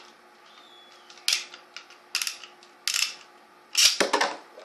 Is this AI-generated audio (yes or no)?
no